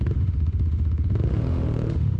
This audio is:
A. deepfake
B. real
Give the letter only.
A